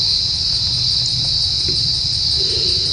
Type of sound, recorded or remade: recorded